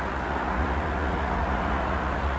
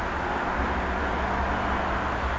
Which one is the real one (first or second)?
second